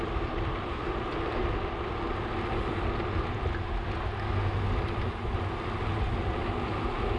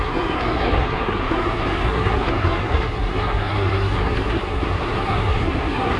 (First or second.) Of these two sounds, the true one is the first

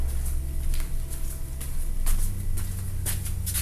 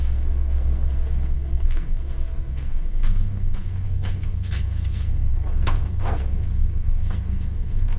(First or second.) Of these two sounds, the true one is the first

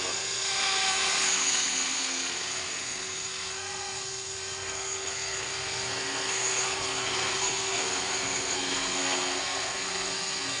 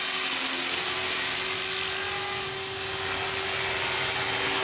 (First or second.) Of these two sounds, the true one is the second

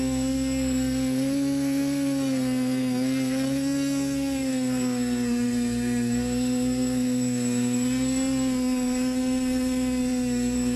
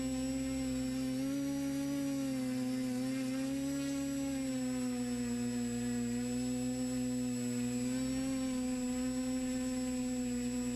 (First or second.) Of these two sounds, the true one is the second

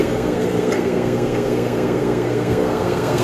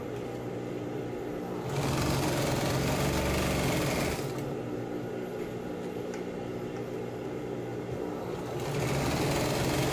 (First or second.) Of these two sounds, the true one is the second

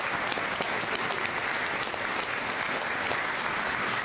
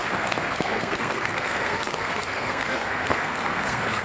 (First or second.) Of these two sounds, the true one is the first